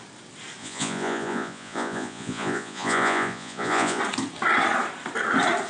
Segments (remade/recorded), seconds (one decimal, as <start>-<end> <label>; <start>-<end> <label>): 0.0-0.6 recorded; 0.6-4.0 remade; 4.0-5.7 recorded